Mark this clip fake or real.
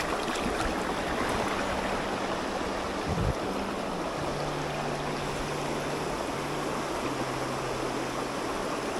real